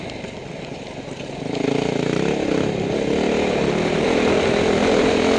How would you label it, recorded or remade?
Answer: recorded